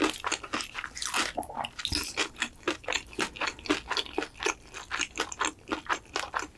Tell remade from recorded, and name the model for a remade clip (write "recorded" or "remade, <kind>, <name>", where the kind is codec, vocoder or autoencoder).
recorded